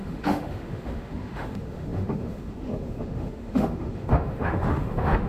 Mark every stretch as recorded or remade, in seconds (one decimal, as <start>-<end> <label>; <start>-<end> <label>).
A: 0.0-5.3 remade